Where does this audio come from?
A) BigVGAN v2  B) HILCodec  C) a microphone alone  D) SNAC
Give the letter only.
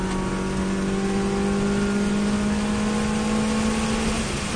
C